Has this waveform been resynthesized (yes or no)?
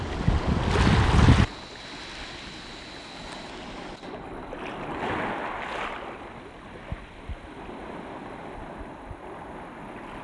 no